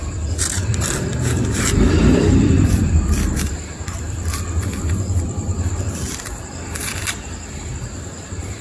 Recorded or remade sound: remade